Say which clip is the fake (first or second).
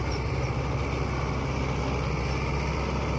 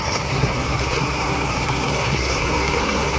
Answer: second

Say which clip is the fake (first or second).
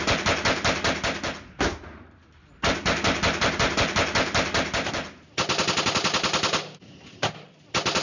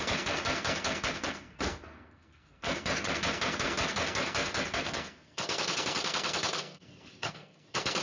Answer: second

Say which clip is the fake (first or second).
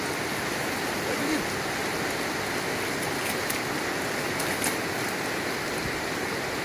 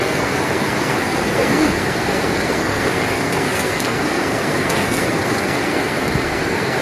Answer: second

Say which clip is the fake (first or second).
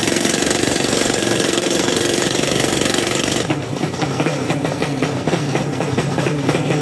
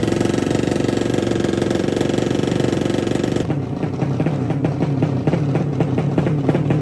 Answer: first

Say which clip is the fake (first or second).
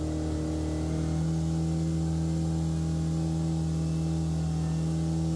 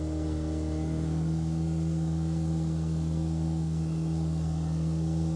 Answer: second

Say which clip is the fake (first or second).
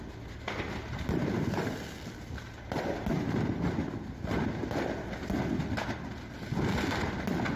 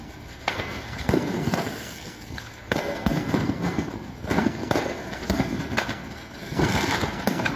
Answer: second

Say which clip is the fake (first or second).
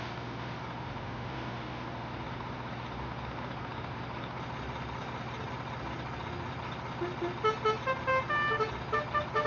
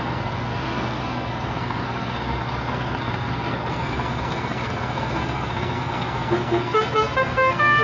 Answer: second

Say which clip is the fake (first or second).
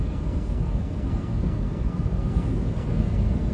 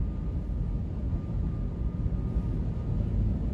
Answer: first